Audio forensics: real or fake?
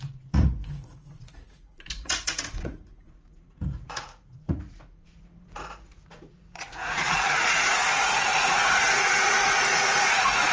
fake